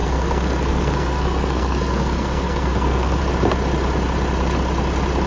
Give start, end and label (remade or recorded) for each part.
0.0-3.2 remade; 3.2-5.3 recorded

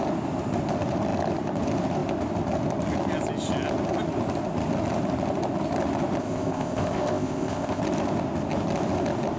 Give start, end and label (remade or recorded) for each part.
0.0-6.2 recorded; 6.2-7.8 remade; 7.8-9.4 recorded